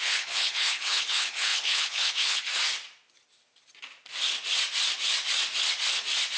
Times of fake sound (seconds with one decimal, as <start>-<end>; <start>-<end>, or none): 0.0-2.5